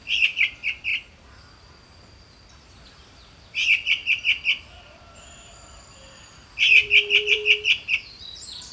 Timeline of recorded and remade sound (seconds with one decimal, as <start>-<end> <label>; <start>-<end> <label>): 0.0-0.9 remade; 0.9-2.5 recorded; 2.5-4.0 remade; 4.0-4.6 recorded; 4.6-8.7 remade